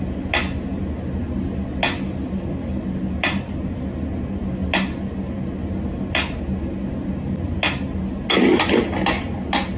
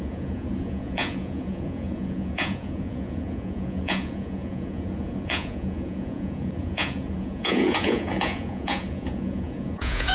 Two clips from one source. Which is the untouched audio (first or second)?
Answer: first